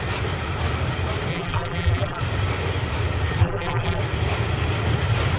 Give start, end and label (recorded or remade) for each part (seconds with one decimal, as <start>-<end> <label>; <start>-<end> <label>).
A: 0.0-1.3 recorded; 1.3-2.2 remade; 2.2-3.4 recorded; 3.4-4.0 remade; 4.0-5.4 recorded